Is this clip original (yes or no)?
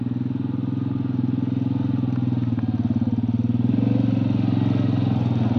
yes